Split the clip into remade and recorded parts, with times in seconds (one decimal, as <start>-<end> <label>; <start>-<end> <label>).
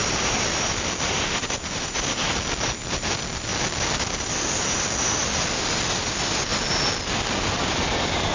0.0-0.5 recorded; 0.5-3.5 remade; 3.5-5.9 recorded; 5.9-6.5 remade; 6.5-7.1 recorded; 7.1-8.3 remade